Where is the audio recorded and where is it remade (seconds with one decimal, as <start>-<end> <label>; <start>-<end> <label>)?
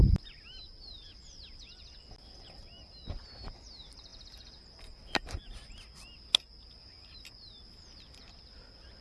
0.0-9.0 recorded